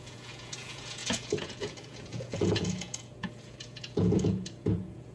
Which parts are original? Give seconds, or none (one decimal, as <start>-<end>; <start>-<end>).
none